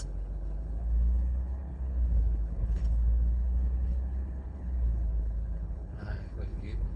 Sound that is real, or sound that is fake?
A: fake